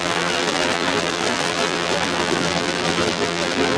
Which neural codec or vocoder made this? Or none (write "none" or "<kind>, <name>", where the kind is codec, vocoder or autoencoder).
vocoder, BigVGAN v2